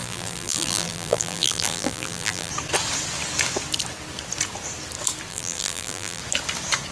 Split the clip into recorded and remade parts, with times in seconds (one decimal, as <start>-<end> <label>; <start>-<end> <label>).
0.0-2.5 remade; 2.5-5.3 recorded; 5.3-6.2 remade; 6.2-6.9 recorded